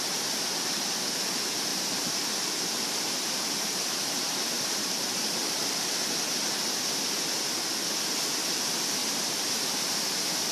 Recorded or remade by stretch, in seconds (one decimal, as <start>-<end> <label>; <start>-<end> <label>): 0.0-1.7 recorded; 1.7-6.1 remade; 6.1-9.0 recorded; 9.0-9.9 remade; 9.9-10.5 recorded